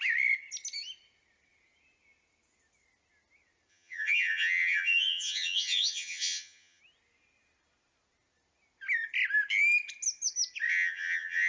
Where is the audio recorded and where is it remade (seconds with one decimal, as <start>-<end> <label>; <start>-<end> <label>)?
0.0-3.7 recorded; 3.7-6.8 remade; 6.8-10.7 recorded; 10.7-11.5 remade